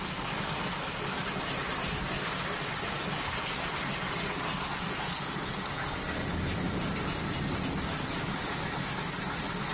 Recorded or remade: recorded